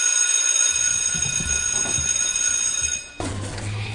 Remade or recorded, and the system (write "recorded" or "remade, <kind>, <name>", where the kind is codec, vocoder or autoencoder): recorded